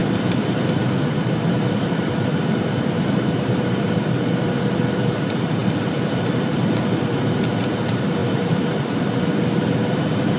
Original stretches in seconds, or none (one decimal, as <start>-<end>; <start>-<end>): none